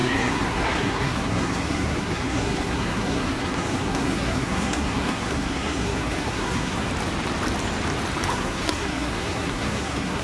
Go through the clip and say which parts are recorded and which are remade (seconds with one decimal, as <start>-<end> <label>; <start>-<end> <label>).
0.0-6.9 remade; 6.9-8.3 recorded; 8.3-10.2 remade